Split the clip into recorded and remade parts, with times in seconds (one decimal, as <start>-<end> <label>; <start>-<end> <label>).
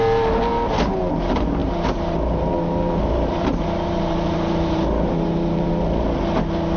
0.0-1.6 recorded; 1.6-5.7 remade; 5.7-6.8 recorded